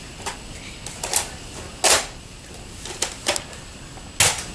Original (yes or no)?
yes